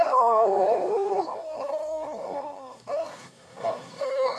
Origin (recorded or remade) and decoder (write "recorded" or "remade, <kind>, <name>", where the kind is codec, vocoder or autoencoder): remade, codec, SNAC